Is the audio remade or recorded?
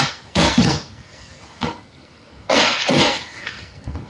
remade